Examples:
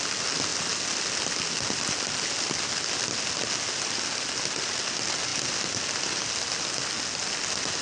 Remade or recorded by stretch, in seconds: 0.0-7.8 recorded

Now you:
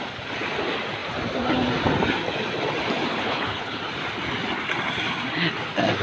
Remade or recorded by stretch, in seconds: 0.0-3.1 recorded; 3.1-3.8 remade; 3.8-6.0 recorded

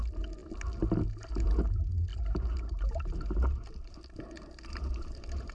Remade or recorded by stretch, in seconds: 0.0-2.1 recorded; 2.1-5.5 remade